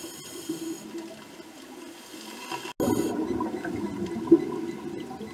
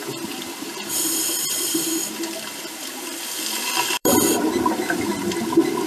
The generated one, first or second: second